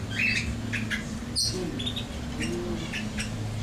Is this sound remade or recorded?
recorded